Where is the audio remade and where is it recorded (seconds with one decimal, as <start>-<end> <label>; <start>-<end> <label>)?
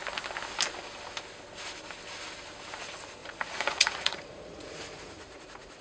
0.0-3.2 recorded; 3.2-5.8 remade